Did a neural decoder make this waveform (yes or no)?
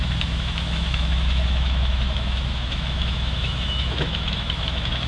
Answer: yes